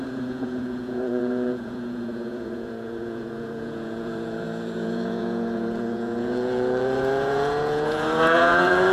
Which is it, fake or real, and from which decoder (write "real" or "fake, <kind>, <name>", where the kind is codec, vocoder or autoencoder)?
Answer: fake, vocoder, Vocos